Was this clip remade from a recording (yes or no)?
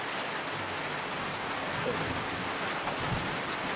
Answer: no